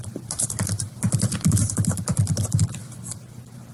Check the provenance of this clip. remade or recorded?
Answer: remade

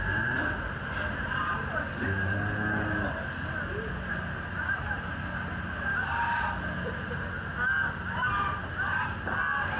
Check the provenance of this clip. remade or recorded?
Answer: recorded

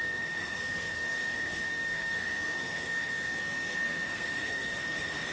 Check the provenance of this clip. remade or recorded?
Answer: remade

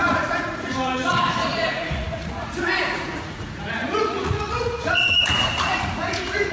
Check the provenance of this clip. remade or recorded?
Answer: remade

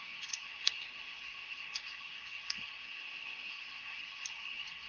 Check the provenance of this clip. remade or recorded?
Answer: remade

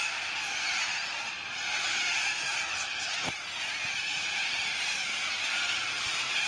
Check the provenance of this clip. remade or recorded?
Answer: recorded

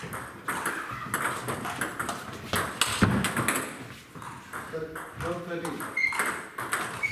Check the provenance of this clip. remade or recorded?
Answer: recorded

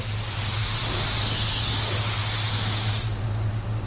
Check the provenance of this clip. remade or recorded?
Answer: recorded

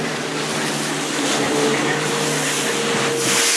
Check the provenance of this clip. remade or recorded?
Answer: recorded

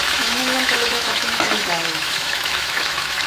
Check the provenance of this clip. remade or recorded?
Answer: remade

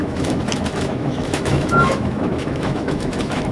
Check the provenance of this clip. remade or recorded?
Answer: remade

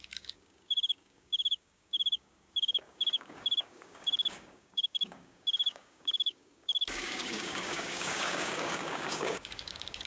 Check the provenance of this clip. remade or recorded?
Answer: remade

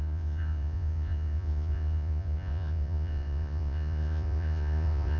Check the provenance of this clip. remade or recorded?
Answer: remade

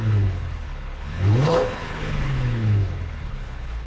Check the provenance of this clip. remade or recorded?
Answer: remade